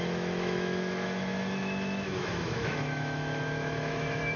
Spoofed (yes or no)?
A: yes